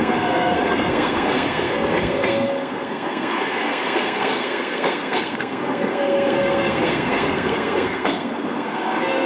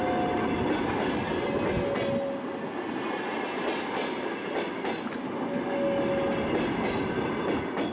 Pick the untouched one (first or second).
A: second